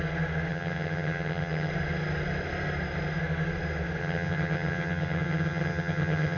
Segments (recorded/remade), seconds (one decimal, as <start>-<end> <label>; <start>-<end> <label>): 0.0-0.5 recorded; 0.5-1.7 remade; 1.7-4.0 recorded; 4.0-6.4 remade